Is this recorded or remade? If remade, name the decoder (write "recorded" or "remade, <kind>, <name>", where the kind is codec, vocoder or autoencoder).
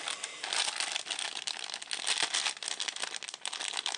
recorded